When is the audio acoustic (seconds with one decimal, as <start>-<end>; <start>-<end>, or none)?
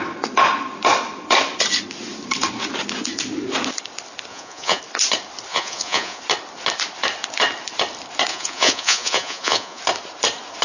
0.0-4.3; 4.8-5.5; 6.2-8.3; 9.8-10.6